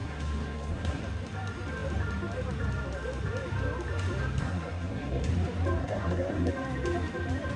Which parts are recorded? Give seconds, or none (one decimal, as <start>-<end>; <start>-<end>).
1.0-4.4; 5.3-5.8; 6.5-7.6